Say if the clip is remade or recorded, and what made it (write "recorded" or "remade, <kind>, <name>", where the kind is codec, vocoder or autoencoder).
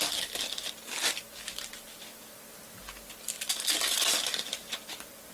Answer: recorded